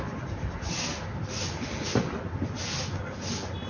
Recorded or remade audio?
recorded